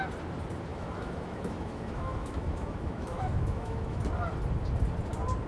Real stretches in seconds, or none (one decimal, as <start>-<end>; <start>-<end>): 0.0-0.7; 4.0-5.5